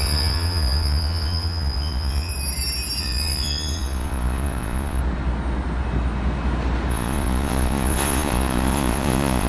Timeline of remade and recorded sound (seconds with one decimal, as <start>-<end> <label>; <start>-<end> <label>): 0.0-2.3 remade; 2.3-3.0 recorded; 3.0-5.0 remade; 5.0-6.9 recorded; 6.9-9.5 remade